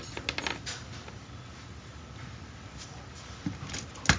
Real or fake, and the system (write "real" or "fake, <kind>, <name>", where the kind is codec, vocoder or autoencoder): real